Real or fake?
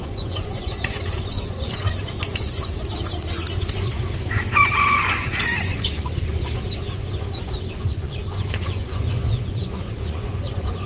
fake